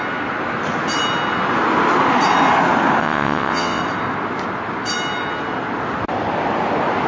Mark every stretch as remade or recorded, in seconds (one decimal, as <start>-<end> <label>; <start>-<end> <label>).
0.0-3.0 recorded; 3.0-3.8 remade; 3.8-7.1 recorded